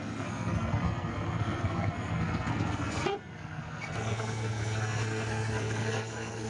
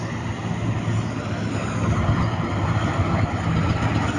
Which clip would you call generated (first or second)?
first